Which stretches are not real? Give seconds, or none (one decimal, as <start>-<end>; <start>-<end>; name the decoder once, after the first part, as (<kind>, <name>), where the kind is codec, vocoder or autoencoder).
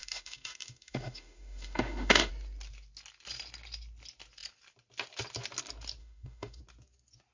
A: 0.0-2.3 (autoencoder, DAC-VAE); 6.0-6.6